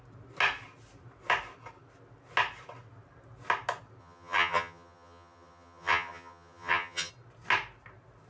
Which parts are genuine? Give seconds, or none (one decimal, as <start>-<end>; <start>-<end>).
0.0-4.0; 7.1-8.3